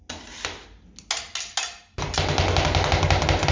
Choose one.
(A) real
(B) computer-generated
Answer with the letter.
A